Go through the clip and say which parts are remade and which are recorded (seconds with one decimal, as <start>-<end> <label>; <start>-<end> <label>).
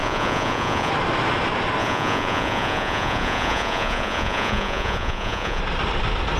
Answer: 0.0-0.9 remade; 0.9-1.8 recorded; 1.8-5.6 remade; 5.6-6.4 recorded